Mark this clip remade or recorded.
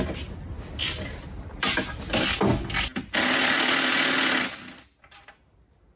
recorded